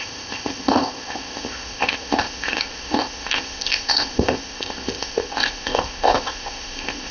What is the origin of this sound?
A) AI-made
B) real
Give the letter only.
A